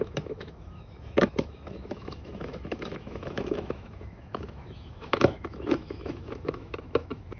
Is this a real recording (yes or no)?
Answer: no